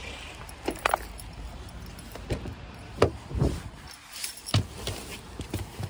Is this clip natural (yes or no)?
yes